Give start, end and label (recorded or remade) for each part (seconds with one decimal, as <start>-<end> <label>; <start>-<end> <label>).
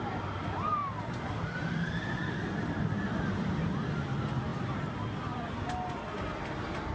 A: 0.0-6.9 recorded